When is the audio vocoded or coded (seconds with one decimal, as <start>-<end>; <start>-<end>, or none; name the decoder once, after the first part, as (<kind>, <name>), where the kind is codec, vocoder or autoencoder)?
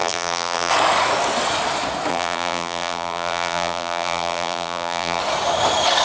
0.0-0.7 (vocoder, BigVGAN v2); 2.1-5.2